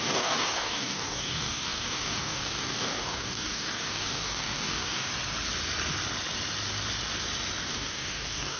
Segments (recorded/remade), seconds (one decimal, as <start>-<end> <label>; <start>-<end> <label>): 0.0-5.1 remade; 5.1-7.6 recorded; 7.6-8.6 remade